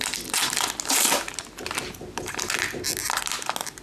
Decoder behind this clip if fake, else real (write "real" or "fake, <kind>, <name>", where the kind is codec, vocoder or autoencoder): real